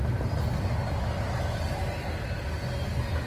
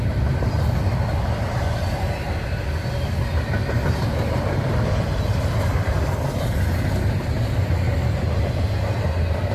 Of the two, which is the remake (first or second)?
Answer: second